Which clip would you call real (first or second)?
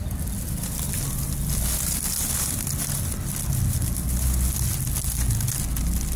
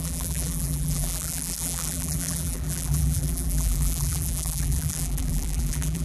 first